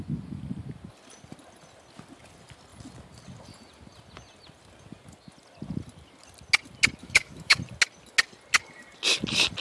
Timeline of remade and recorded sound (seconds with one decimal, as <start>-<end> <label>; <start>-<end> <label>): 0.0-7.0 recorded; 7.0-7.6 remade; 7.6-9.6 recorded